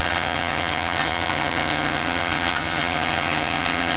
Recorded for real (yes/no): no